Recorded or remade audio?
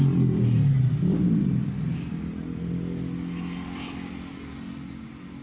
recorded